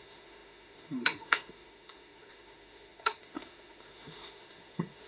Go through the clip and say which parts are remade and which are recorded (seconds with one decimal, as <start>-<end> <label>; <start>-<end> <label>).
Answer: 0.0-5.1 remade